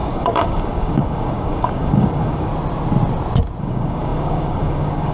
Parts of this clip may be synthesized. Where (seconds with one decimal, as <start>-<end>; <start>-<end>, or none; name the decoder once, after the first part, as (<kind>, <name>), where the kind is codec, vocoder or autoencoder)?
0.0-2.5 (codec, DAC); 3.6-5.1